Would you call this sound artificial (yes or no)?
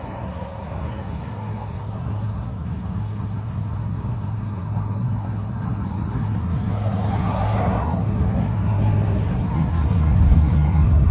yes